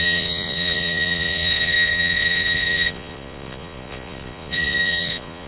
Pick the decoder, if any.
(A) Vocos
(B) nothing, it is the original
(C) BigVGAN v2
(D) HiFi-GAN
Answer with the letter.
A